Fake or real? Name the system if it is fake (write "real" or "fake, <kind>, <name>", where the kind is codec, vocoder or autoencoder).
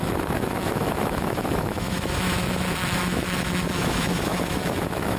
fake, autoencoder, DAC-VAE